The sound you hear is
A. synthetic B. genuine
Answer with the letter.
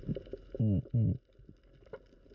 B